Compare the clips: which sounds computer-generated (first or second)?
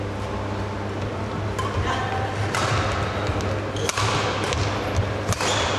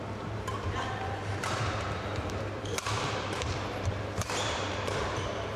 second